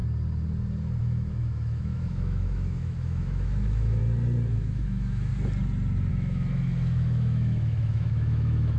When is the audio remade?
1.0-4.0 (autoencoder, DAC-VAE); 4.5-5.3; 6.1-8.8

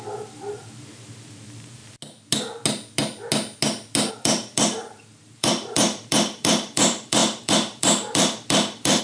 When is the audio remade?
0.0-1.8 (vocoder, BigVGAN v2); 4.1-9.0